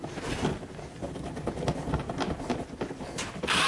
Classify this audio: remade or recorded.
recorded